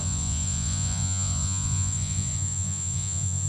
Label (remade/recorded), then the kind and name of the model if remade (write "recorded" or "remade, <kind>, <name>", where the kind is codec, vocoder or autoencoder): remade, vocoder, Vocos